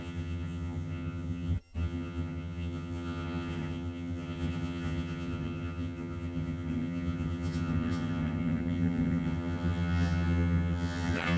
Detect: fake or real fake